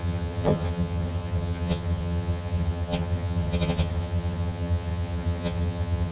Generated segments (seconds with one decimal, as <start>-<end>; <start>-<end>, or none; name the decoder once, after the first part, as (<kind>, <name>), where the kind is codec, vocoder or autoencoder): 0.0-6.1 (vocoder, HiFi-GAN)